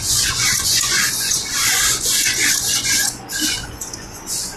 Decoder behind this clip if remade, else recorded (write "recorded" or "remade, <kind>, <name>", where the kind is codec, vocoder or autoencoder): remade, vocoder, Vocos